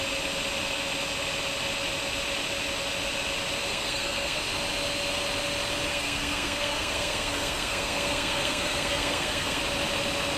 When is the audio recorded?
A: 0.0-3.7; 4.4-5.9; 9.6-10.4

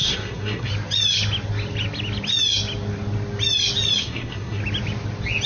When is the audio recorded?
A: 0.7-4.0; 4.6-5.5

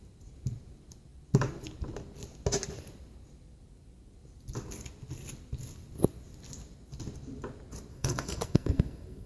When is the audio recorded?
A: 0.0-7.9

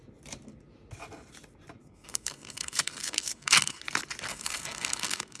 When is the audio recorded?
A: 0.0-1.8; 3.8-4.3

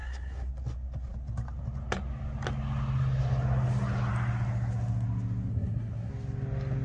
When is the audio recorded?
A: 0.5-5.5; 6.1-6.8

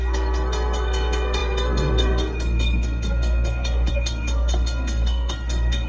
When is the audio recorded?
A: none

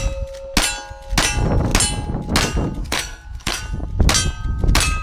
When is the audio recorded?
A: 0.0-2.8; 3.6-5.0

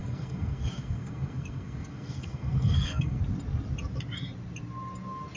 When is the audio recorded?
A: 3.2-5.4